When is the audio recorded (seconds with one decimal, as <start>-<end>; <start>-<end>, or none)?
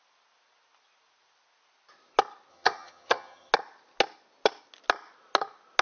0.0-2.5; 3.5-5.8